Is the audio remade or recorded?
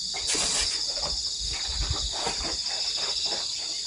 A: recorded